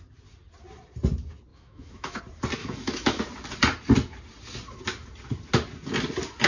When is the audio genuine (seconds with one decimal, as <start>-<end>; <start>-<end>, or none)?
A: 0.0-1.5; 2.2-2.6; 3.2-6.5